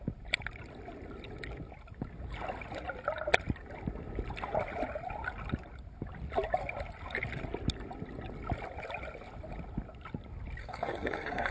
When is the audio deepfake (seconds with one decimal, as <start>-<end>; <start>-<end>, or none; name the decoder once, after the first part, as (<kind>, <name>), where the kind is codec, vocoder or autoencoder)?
10.6-11.5 (codec, SNAC)